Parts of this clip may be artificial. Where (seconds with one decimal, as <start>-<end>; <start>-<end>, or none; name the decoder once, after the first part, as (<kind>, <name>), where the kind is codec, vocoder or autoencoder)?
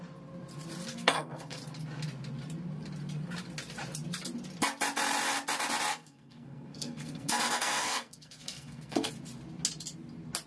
0.9-1.6 (codec, SNAC); 5.9-9.1